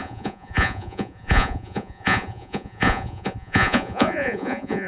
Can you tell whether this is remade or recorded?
remade